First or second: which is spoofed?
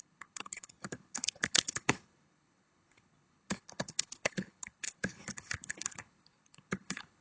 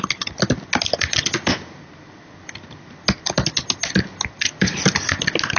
first